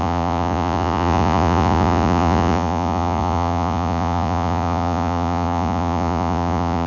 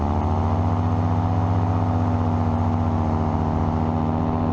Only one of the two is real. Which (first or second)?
second